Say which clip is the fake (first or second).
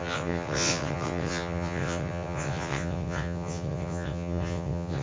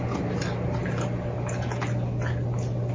first